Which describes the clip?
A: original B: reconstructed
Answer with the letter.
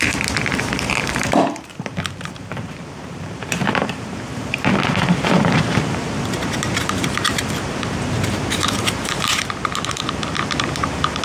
B